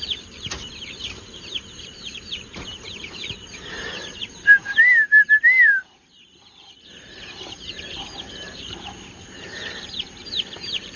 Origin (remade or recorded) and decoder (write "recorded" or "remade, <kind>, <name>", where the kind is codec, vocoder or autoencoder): remade, vocoder, BigVGAN v2